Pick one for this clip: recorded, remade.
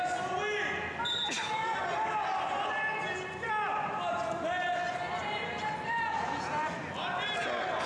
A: recorded